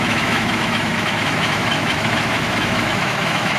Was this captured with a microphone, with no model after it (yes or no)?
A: no